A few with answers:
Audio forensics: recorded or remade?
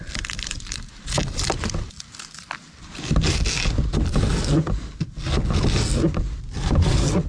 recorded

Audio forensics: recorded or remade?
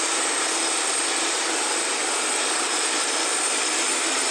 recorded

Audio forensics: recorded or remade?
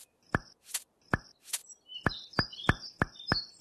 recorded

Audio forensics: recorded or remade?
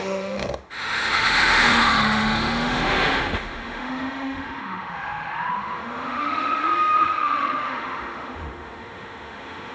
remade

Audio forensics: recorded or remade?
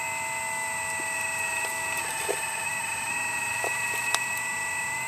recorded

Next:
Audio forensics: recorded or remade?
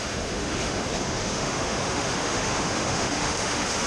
remade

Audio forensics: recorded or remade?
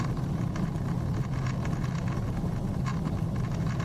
recorded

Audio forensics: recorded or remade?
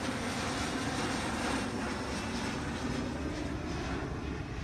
recorded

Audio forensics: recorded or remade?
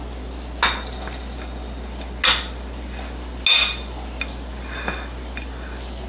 recorded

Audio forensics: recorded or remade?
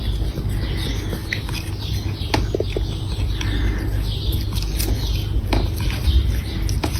recorded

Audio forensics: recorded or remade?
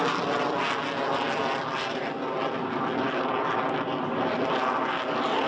recorded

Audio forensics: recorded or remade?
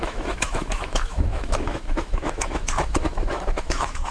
remade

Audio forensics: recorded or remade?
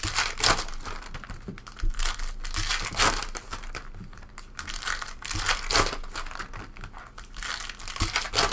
recorded